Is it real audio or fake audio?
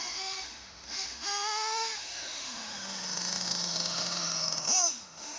fake